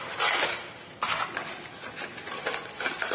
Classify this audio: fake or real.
real